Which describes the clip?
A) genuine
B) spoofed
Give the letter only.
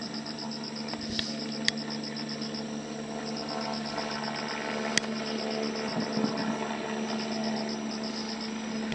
A